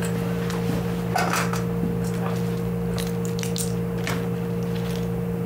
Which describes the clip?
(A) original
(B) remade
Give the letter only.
A